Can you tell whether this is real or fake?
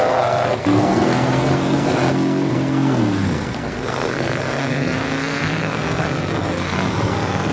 fake